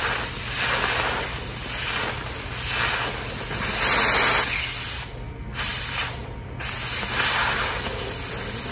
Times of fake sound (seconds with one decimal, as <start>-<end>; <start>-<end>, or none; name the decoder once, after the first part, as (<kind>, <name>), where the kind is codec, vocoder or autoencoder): 5.7-6.2 (vocoder, BigVGAN v2)